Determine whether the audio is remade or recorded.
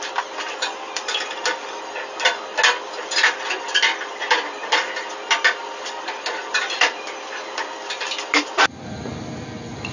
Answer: recorded